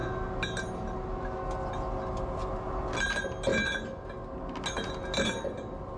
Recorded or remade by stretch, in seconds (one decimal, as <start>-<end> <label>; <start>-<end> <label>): 0.0-6.0 recorded